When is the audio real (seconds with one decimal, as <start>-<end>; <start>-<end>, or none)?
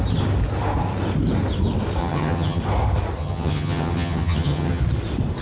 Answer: 0.0-2.0; 2.6-3.2; 4.8-5.4